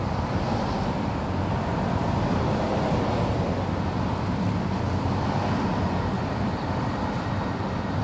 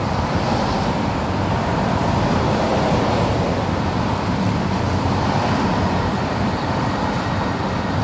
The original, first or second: first